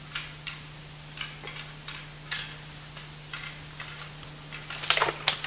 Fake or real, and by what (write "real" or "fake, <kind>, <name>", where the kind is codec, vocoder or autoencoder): real